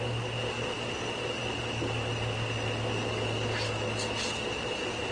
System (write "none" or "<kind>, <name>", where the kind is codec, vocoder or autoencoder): none